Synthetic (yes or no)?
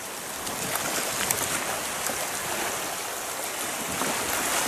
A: no